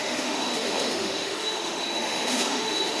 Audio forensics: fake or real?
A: fake